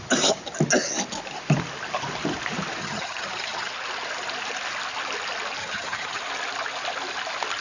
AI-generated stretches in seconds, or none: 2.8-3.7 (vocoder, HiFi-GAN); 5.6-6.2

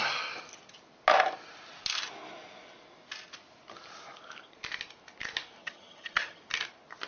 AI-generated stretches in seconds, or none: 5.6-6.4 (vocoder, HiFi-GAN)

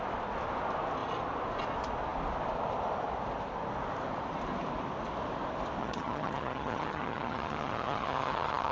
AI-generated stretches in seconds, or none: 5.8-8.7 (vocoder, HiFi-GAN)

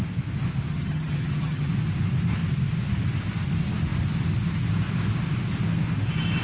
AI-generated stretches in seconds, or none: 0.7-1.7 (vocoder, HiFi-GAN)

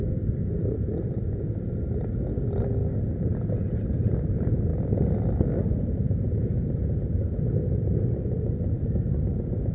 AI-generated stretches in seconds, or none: none